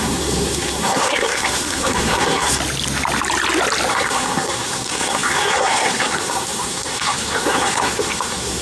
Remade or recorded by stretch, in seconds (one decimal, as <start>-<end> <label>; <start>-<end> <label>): 0.0-2.6 remade; 2.6-3.9 recorded; 3.9-8.6 remade